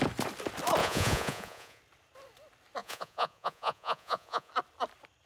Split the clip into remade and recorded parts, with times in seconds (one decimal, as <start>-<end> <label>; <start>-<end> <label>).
0.0-0.8 recorded; 0.8-1.8 remade; 1.8-2.8 recorded; 2.8-4.5 remade; 4.5-5.3 recorded